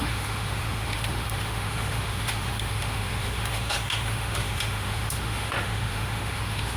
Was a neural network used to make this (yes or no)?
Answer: yes